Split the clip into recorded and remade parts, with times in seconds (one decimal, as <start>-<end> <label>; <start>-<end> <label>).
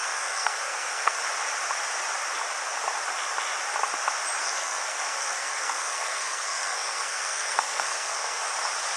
0.0-1.2 remade; 1.2-4.4 recorded; 4.4-8.4 remade; 8.4-9.0 recorded